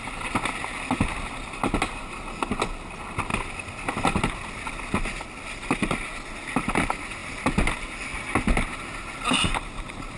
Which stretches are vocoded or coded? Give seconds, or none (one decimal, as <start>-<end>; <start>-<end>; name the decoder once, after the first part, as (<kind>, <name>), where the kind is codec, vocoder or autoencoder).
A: none